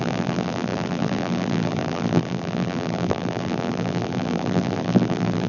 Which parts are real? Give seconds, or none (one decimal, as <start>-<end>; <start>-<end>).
none

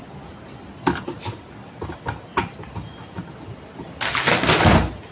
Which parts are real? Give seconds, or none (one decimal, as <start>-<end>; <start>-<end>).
0.0-5.1